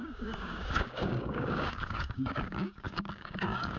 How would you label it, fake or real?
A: fake